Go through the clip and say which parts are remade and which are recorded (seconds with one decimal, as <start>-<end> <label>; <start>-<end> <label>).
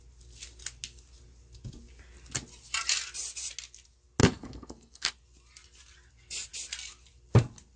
0.0-4.2 recorded; 4.2-5.1 remade; 5.1-7.8 recorded